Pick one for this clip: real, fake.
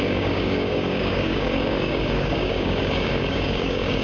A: fake